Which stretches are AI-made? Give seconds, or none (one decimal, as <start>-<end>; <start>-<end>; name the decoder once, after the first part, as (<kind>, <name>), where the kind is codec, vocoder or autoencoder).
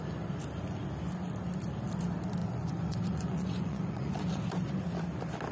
2.4-4.4 (vocoder, Vocos)